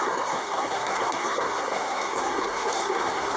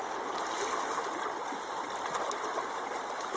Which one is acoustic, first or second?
second